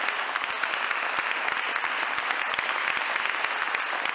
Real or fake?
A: real